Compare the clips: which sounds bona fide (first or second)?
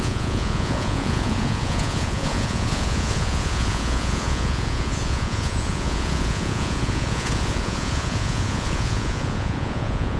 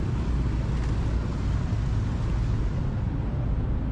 second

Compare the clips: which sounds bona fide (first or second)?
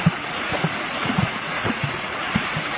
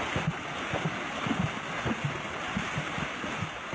second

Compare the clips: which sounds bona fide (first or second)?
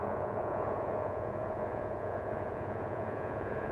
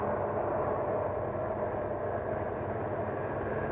second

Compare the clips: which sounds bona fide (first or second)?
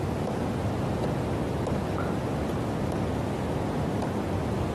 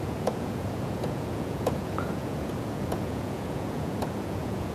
first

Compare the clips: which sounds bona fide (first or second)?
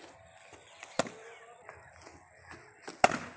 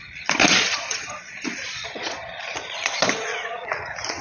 first